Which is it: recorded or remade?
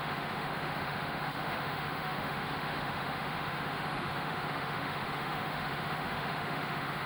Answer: remade